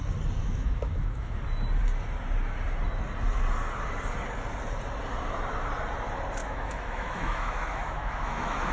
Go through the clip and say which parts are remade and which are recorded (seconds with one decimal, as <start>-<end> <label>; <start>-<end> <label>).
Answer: 0.0-0.4 recorded; 0.4-1.4 remade; 1.4-6.4 recorded; 6.4-8.7 remade